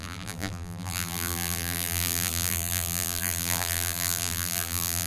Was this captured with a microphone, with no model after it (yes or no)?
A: no